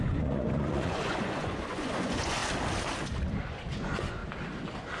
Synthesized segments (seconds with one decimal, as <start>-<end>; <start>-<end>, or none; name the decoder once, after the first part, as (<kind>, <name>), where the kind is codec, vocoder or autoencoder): 0.0-2.4 (vocoder, Vocos); 3.4-4.2